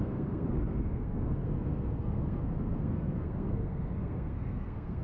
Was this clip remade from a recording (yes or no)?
yes